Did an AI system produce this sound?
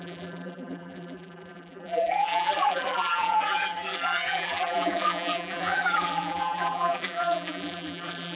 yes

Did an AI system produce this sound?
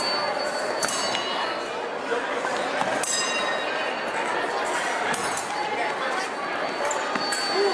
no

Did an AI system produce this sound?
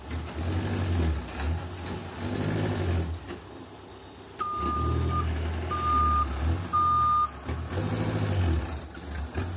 no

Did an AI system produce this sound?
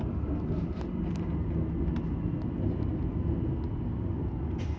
no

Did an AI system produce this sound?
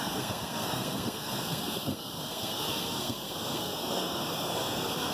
yes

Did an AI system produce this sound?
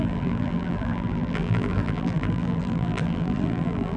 yes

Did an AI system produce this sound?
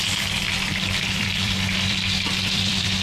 yes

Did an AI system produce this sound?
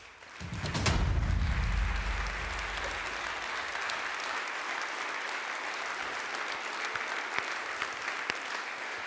no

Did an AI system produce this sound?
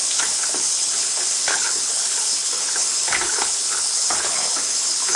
yes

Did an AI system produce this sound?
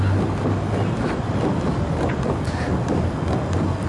no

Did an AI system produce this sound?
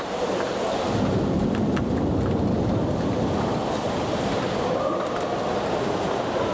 no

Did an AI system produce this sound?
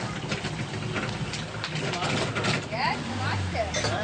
no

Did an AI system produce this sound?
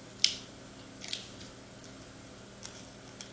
no